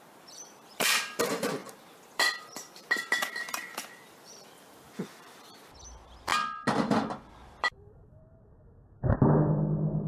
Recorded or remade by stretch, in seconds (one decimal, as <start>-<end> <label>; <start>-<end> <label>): 0.0-6.3 remade; 6.3-7.1 recorded; 7.1-8.2 remade; 8.2-10.1 recorded